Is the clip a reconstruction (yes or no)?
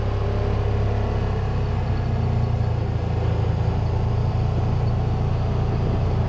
no